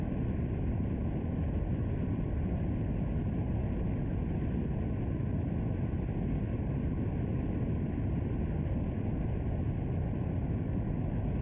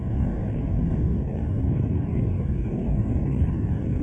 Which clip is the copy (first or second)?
second